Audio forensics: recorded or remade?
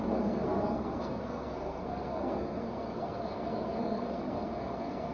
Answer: remade